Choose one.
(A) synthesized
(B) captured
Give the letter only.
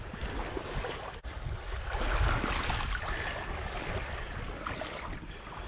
B